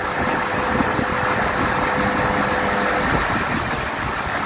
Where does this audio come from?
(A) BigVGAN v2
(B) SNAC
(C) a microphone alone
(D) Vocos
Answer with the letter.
C